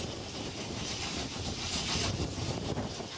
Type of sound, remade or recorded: remade